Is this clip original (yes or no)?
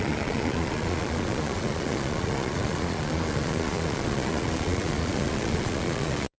no